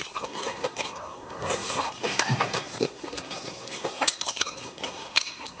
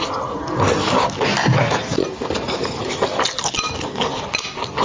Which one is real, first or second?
second